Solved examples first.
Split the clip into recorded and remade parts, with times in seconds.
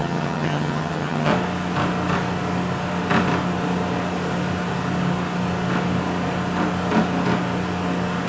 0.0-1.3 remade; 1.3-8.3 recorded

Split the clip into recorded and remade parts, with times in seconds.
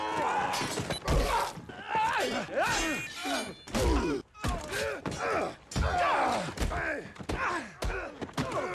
0.0-8.7 recorded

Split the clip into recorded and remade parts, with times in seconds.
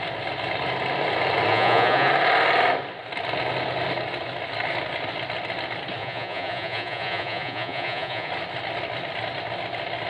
0.0-1.5 recorded; 1.5-2.1 remade; 2.1-6.0 recorded; 6.0-8.3 remade; 8.3-10.1 recorded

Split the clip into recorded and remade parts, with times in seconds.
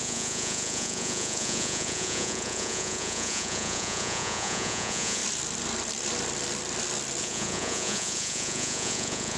0.0-5.2 remade; 5.2-7.2 recorded; 7.2-9.4 remade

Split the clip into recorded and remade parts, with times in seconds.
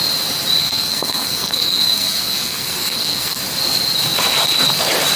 0.0-0.6 recorded; 0.6-3.4 remade; 3.4-5.2 recorded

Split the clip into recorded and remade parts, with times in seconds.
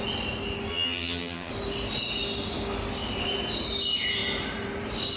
0.0-0.7 recorded; 0.7-1.5 remade; 1.5-5.2 recorded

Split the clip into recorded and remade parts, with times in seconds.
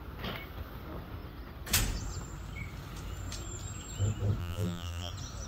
0.0-4.4 recorded; 4.4-5.1 remade; 5.1-5.5 recorded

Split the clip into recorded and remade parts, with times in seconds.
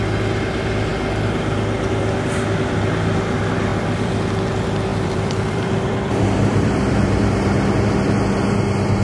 0.0-3.7 recorded; 3.7-4.3 remade; 4.3-4.9 recorded; 4.9-7.7 remade; 7.7-9.0 recorded